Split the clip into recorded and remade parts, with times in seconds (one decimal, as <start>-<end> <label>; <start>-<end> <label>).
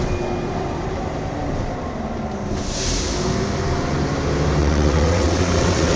0.0-4.6 recorded; 4.6-6.0 remade